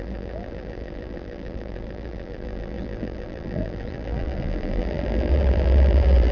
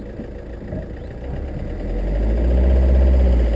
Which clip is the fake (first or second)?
first